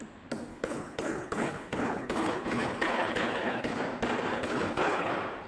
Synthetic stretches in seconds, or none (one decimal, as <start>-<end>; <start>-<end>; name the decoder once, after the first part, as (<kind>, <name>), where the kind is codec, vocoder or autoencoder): 0.5-3.8 (codec, HILCodec); 4.3-5.1